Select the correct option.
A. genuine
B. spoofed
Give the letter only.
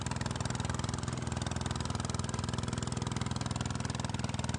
A